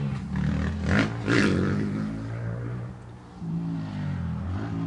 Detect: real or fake real